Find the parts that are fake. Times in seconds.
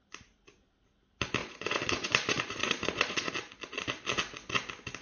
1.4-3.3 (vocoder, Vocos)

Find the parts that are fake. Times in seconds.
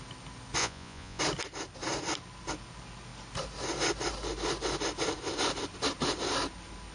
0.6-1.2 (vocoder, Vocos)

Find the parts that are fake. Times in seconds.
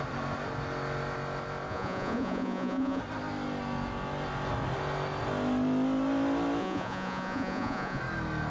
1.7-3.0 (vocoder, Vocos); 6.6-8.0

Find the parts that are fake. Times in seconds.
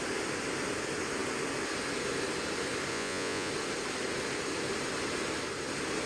2.9-3.5 (vocoder, Vocos)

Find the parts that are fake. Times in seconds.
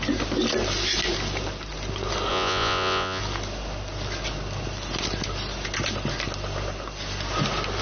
2.3-3.2 (vocoder, Vocos)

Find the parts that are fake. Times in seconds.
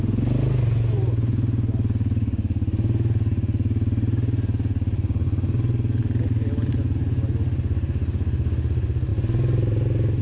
none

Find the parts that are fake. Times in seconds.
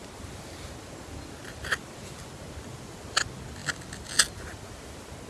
none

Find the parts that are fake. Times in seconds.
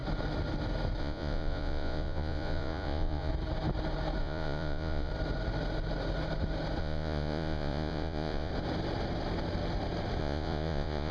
1.0-3.3 (vocoder, Vocos); 4.2-5.1; 6.8-8.5; 10.2-11.1